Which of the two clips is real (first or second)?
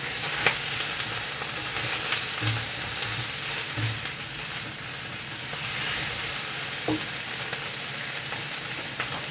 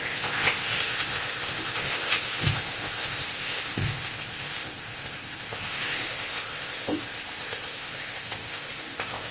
first